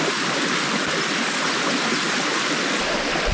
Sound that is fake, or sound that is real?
fake